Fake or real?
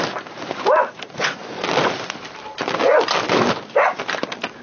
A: real